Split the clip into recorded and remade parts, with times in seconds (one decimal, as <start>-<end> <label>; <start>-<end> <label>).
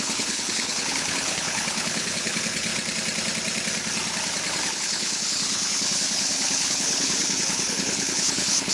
0.0-2.7 remade; 2.7-4.7 recorded; 4.7-8.7 remade